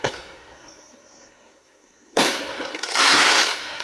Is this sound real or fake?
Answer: fake